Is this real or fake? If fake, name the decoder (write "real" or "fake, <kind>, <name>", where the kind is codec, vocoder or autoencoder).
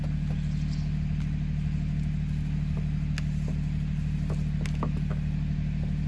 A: real